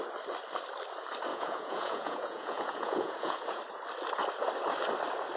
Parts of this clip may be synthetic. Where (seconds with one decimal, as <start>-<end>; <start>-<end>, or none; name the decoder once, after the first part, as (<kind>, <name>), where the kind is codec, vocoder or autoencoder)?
1.3-3.6 (vocoder, Vocos)